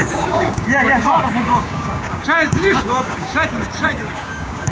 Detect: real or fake fake